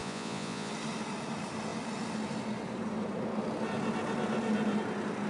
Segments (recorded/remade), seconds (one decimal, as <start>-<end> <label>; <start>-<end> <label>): 0.0-0.7 remade; 0.7-5.3 recorded